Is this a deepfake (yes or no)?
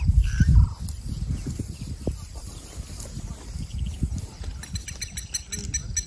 no